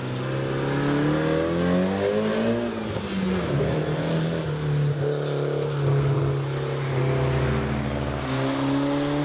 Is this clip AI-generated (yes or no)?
no